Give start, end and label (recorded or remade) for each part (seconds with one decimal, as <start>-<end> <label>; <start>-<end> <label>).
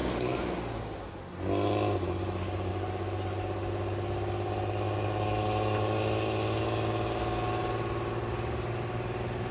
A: 0.0-9.5 recorded